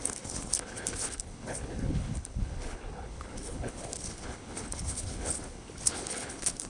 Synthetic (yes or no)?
yes